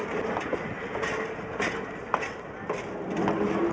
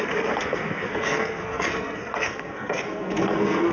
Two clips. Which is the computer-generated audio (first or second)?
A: second